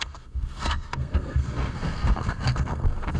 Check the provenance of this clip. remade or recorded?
remade